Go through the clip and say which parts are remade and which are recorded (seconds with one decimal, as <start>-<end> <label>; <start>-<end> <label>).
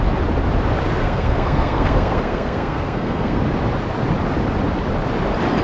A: 0.0-1.0 recorded; 1.0-3.4 remade; 3.4-5.6 recorded